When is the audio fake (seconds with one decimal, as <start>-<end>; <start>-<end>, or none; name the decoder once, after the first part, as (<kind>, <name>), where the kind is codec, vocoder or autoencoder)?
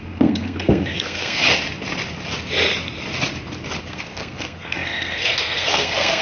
0.0-1.4 (codec, SNAC); 3.8-6.2